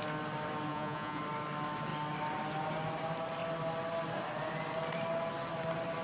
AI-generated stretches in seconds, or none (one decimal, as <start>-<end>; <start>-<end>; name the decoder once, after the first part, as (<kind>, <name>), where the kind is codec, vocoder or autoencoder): 0.7-1.2 (vocoder, Vocos)